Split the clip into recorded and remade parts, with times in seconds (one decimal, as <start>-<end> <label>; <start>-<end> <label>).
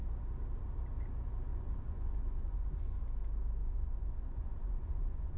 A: 0.0-1.5 recorded; 1.5-3.0 remade; 3.0-3.6 recorded; 3.6-5.4 remade